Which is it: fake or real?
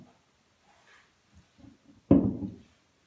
real